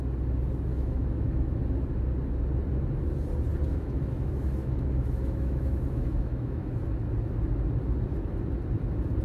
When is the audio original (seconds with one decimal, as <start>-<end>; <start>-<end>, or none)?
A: 0.0-0.7; 1.6-3.7; 6.8-9.2